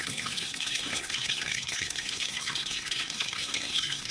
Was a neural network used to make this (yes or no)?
yes